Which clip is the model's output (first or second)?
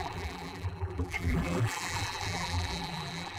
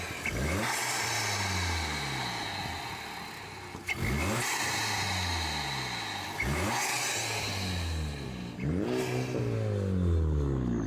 first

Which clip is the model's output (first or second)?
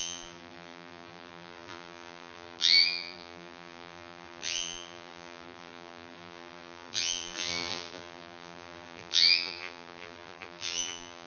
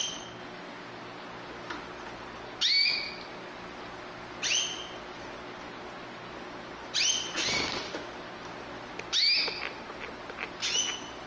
first